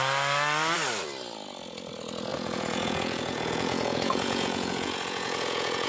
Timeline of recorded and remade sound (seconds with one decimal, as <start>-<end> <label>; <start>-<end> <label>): 0.0-2.3 recorded; 2.3-5.9 remade